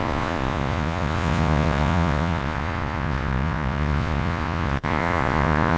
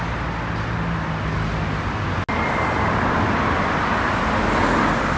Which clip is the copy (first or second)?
first